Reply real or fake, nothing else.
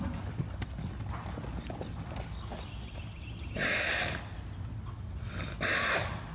real